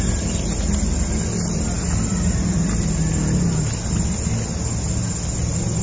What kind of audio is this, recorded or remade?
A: recorded